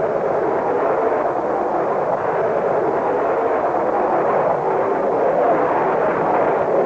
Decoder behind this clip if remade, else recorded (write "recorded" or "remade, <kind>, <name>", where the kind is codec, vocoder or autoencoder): recorded